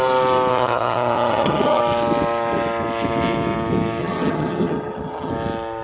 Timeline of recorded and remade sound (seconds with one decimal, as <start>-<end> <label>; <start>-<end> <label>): 0.0-0.5 recorded; 0.5-1.8 remade; 1.8-4.0 recorded; 4.0-5.3 remade; 5.3-5.8 recorded